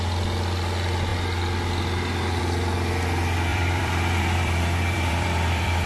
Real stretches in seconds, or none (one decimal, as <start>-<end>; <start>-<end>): 0.0-3.5